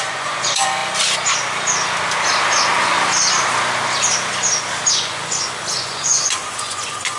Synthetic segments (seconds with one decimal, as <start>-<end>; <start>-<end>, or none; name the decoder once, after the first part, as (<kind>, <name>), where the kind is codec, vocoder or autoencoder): 0.0-0.8 (vocoder, Vocos); 4.9-7.2